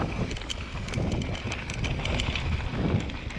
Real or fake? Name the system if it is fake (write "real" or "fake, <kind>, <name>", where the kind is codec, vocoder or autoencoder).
real